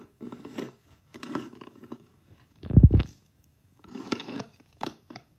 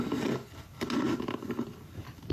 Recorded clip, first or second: second